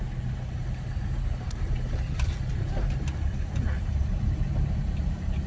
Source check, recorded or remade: recorded